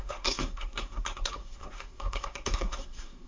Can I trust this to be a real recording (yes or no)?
no